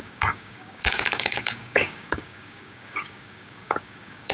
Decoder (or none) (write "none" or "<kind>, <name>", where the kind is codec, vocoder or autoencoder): codec, DAC